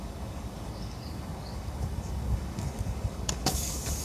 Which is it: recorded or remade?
remade